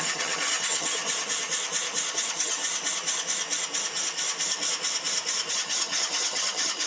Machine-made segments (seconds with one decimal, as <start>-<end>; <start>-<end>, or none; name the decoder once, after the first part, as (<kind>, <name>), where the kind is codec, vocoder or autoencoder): 0.0-1.0 (vocoder, HiFi-GAN); 2.1-2.6; 5.5-6.9